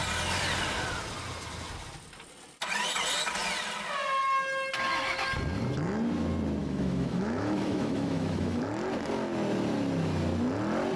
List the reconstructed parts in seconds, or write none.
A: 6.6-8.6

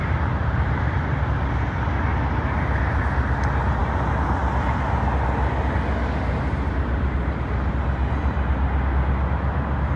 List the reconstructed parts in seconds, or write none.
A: none

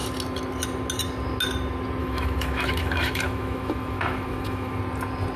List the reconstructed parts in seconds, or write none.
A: 2.0-4.8

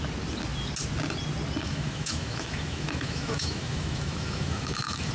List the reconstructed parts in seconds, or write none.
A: 1.6-5.1

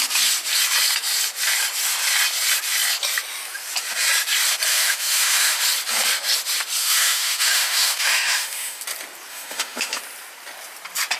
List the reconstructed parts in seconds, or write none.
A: 4.7-5.6; 6.8-8.8; 9.3-10.0